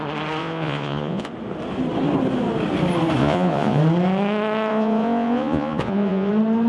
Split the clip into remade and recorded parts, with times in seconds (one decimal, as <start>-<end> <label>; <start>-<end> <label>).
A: 0.0-0.4 recorded; 0.4-1.3 remade; 1.3-3.2 recorded; 3.2-3.8 remade; 3.8-4.7 recorded; 4.7-6.3 remade; 6.3-6.7 recorded